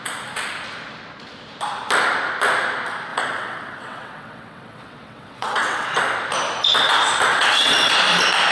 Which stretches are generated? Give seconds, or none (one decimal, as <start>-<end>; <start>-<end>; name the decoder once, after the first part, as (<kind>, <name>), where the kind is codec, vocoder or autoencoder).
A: 3.1-6.0 (vocoder, WaveNeXt); 7.3-7.9